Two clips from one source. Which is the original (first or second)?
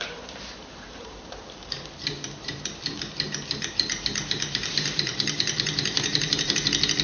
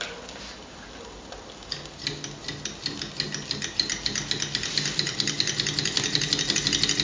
second